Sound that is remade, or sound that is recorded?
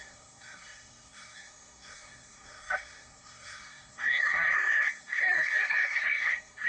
remade